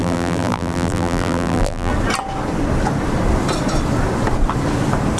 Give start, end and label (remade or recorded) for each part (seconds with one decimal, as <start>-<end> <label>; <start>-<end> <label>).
0.0-1.9 remade; 1.9-5.2 recorded